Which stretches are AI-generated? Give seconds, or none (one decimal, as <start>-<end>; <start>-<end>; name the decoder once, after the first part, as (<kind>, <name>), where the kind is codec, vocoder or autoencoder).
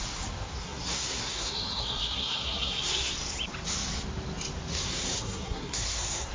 0.6-3.1 (codec, SNAC); 4.7-6.3